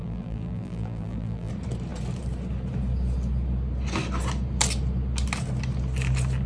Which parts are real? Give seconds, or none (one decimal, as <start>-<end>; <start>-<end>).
1.5-6.5